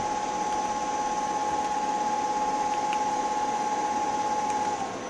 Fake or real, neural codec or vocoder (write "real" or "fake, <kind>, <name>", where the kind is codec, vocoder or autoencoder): real